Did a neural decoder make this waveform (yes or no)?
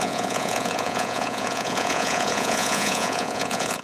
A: yes